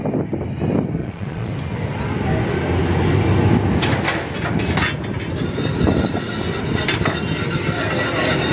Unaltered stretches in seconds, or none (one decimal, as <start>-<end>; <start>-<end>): 0.0-1.0; 1.5-8.5